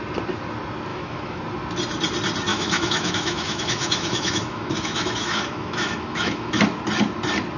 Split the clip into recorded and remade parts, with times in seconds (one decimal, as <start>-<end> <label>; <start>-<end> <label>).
0.0-0.9 recorded; 0.9-1.4 remade; 1.4-2.5 recorded; 2.5-6.6 remade; 6.6-7.6 recorded